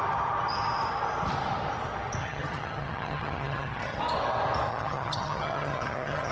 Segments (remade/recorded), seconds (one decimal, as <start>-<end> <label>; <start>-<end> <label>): 0.0-2.2 recorded; 2.2-4.0 remade; 4.0-4.7 recorded; 4.7-6.3 remade